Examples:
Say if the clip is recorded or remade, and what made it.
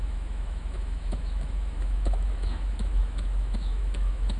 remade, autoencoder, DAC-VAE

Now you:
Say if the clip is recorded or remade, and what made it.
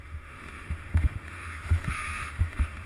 remade, autoencoder, DAC-VAE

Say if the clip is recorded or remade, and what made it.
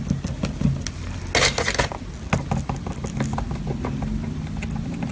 recorded